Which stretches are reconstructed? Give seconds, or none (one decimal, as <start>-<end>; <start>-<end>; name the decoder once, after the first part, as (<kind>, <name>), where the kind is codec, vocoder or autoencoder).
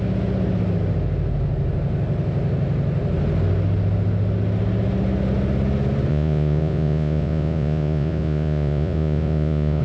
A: 6.1-9.8 (vocoder, Vocos)